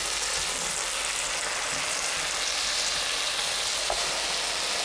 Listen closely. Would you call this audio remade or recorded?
recorded